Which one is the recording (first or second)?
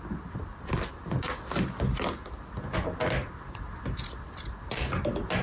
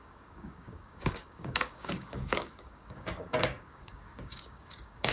first